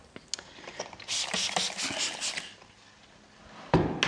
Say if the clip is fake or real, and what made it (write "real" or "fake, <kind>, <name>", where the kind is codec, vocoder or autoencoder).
real